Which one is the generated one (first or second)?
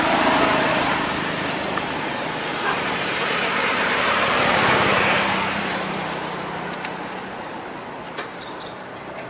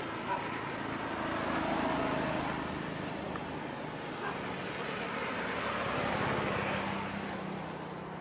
first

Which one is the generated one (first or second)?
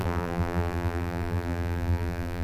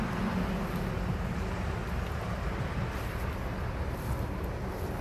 first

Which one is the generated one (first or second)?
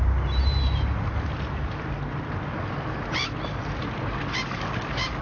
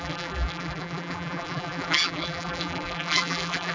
second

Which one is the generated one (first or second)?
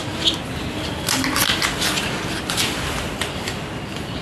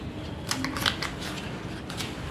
first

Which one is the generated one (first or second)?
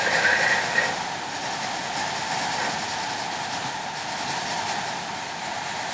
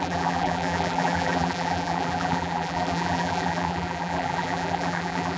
second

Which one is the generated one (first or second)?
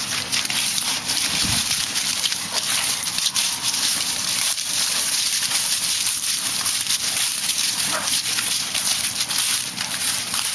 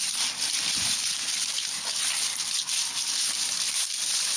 first